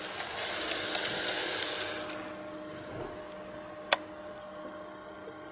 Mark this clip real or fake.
real